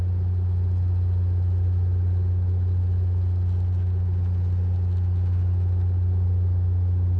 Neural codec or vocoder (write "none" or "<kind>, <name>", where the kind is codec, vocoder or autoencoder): none